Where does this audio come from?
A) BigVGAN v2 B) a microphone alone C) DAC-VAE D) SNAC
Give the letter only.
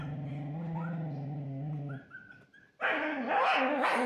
B